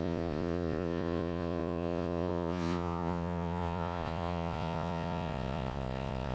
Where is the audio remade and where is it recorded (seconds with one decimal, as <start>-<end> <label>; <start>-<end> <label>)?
0.0-6.3 remade